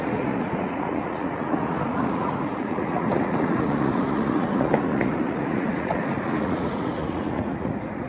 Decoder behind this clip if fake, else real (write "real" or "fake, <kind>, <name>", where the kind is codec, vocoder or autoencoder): fake, vocoder, Vocos